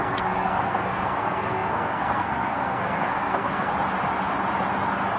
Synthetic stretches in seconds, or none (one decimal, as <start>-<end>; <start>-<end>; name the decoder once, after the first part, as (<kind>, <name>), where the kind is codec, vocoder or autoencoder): 0.0-3.7 (codec, SNAC)